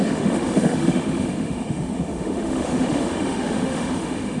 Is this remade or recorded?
remade